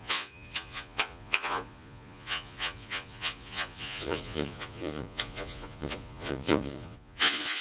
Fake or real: fake